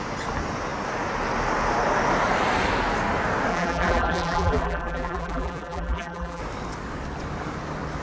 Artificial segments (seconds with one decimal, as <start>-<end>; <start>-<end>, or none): 3.5-6.4